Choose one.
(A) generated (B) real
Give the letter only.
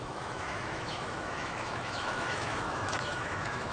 A